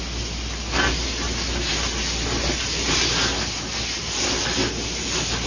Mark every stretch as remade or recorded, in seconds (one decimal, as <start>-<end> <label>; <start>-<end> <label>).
0.0-5.5 recorded